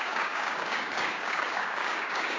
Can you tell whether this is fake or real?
fake